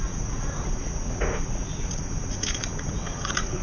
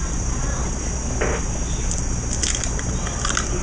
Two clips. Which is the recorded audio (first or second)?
second